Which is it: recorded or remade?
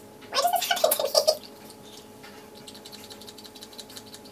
remade